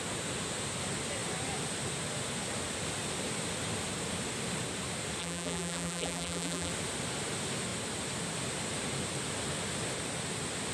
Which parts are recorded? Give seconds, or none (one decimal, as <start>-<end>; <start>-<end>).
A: 0.0-5.2; 6.7-10.7